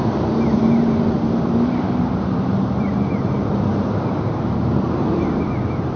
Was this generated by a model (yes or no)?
yes